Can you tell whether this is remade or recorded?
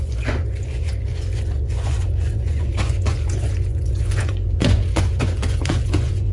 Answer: remade